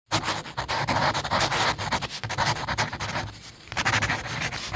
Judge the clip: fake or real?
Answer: real